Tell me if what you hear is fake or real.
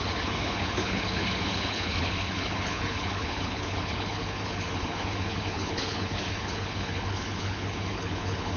fake